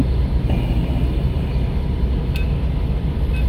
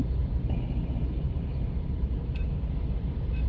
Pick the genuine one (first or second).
first